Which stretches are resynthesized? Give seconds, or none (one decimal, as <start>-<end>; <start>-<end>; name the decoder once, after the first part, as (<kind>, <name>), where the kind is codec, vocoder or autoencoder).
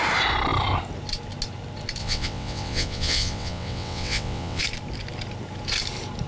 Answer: 2.0-4.6 (vocoder, WaveNeXt)